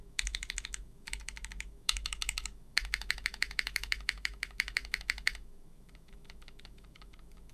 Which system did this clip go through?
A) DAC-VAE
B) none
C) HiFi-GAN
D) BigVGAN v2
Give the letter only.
A